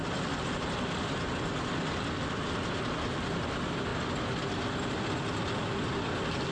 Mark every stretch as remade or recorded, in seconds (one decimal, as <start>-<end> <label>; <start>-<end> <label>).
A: 0.0-6.5 recorded